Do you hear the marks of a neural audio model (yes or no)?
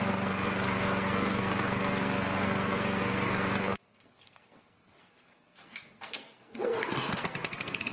yes